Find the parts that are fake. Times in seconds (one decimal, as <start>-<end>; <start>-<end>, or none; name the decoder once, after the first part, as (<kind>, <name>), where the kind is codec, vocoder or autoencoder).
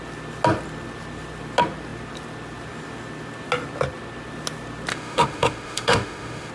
4.9-6.5 (autoencoder, DAC-VAE)